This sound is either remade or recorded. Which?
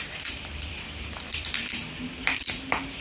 remade